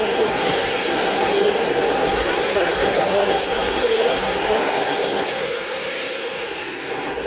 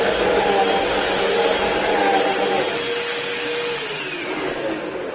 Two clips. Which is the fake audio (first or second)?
first